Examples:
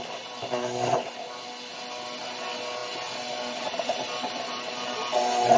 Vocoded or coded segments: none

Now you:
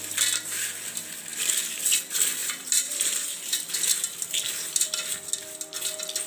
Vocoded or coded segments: 2.4-3.6 (vocoder, BigVGAN v2)

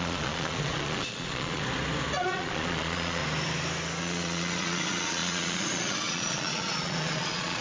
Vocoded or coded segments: 0.0-1.6 (vocoder, Vocos); 2.2-3.2; 4.0-7.6

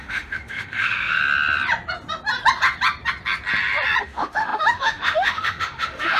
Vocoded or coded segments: 0.0-1.2 (autoencoder, DAC-VAE); 4.0-6.2

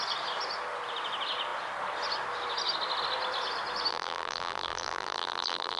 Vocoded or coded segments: 3.9-5.8 (vocoder, BigVGAN v2)

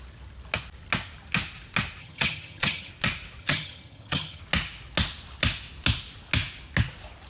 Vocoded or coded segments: 2.0-2.9 (vocoder, HiFi-GAN); 3.4-4.4

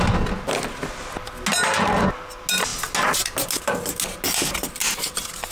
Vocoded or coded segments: none

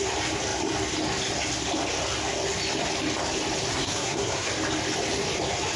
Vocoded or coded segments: 3.7-4.5 (codec, SNAC)